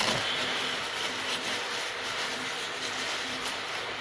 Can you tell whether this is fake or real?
real